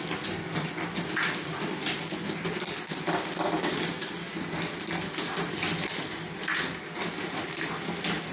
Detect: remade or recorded recorded